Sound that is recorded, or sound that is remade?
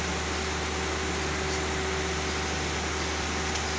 recorded